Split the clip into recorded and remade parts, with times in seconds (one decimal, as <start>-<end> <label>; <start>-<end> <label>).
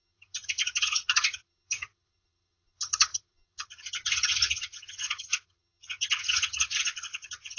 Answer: 0.0-7.6 remade